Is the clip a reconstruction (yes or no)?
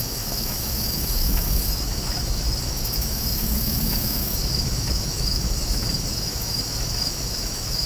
yes